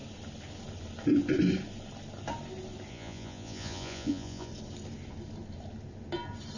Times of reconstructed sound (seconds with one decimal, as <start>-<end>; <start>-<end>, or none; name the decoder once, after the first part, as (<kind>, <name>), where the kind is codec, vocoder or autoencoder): 2.9-4.5 (vocoder, Vocos)